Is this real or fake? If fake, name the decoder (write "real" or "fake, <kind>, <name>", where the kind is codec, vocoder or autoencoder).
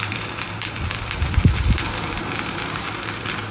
fake, vocoder, BigVGAN v2